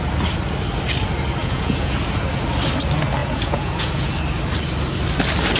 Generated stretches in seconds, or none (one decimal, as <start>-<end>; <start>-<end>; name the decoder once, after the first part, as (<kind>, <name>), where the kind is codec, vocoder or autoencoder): 1.4-2.1 (vocoder, Vocos); 3.2-4.1